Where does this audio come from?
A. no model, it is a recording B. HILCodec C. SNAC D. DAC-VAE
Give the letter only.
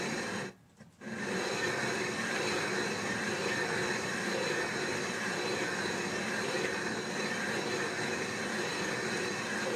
A